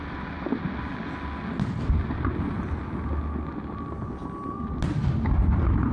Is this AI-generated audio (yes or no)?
no